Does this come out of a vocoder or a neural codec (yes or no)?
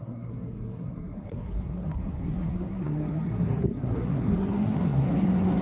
yes